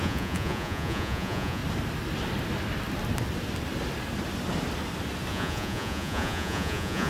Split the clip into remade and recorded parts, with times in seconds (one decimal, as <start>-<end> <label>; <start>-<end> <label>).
0.0-1.6 remade; 1.6-5.3 recorded; 5.3-7.1 remade

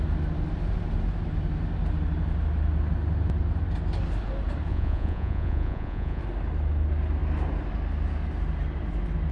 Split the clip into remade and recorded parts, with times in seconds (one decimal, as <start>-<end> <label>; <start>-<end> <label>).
0.0-4.7 recorded; 4.7-6.2 remade; 6.2-9.3 recorded